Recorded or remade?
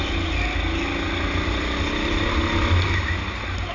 recorded